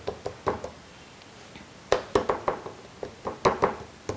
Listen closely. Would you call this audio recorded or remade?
recorded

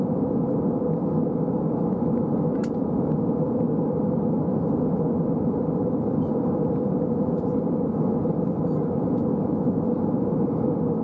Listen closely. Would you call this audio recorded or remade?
recorded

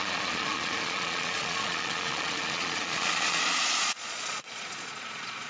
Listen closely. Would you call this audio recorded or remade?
remade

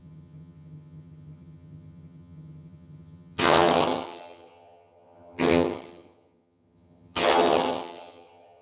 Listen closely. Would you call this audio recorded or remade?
remade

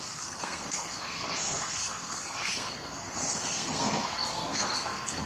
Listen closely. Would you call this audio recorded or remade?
remade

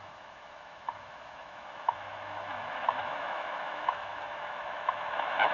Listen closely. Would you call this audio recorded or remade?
remade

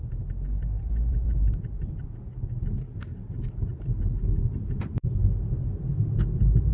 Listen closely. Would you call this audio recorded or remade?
recorded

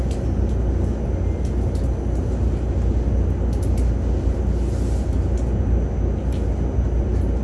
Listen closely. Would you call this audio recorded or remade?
recorded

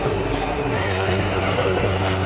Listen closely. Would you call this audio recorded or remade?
remade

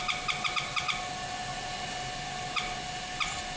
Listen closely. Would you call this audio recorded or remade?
recorded